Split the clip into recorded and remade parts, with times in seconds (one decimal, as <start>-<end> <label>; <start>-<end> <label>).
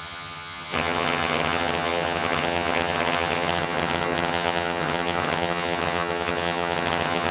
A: 0.0-7.3 remade